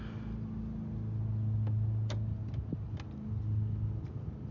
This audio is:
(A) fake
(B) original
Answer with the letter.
B